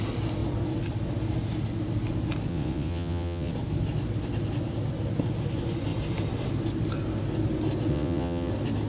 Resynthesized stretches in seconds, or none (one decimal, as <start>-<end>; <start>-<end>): 2.5-3.5; 7.9-8.5